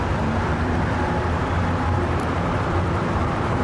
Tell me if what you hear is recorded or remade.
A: remade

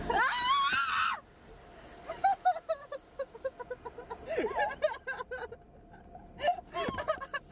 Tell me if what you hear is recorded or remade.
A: recorded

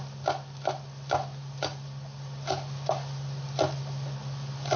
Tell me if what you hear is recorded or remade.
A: recorded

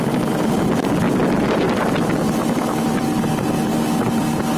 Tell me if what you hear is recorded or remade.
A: recorded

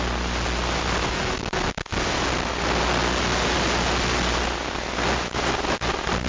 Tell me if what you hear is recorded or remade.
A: recorded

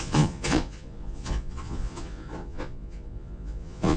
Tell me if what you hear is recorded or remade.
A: remade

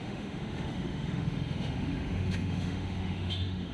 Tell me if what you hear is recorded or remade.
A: remade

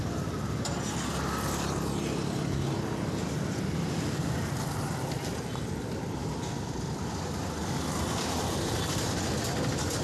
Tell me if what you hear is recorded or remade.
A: recorded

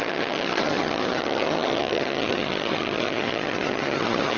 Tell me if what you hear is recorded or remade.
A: remade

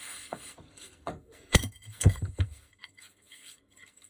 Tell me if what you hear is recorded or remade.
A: remade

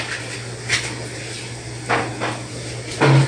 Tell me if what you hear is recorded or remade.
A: recorded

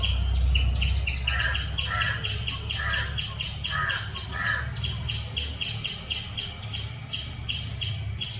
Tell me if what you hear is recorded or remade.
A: recorded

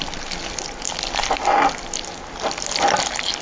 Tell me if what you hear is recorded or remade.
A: recorded